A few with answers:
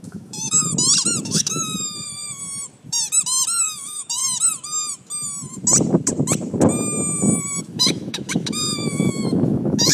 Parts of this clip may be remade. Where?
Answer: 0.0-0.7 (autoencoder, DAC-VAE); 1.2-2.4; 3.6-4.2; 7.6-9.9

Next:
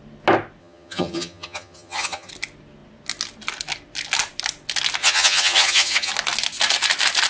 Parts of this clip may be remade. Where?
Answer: 0.6-2.3 (vocoder, HiFi-GAN); 5.0-6.1

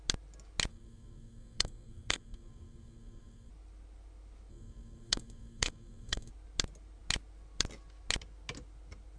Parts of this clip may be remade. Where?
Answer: 0.7-3.5 (codec, SNAC); 4.5-6.3

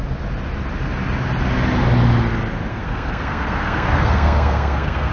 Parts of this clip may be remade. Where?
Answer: 2.7-5.1 (codec, SNAC)